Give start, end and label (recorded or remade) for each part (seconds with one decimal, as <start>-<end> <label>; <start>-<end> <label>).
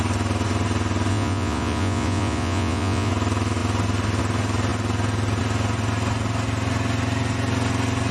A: 0.0-1.1 recorded; 1.1-3.1 remade; 3.1-8.1 recorded